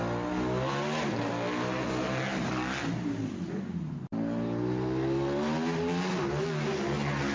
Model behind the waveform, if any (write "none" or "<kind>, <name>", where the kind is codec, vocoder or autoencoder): none